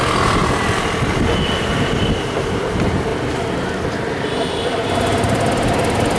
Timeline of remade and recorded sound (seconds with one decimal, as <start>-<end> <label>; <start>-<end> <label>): 0.0-6.2 recorded